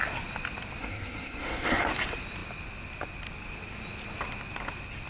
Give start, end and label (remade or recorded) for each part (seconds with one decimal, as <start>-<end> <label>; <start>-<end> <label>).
0.0-0.8 recorded; 0.8-1.8 remade; 1.8-5.1 recorded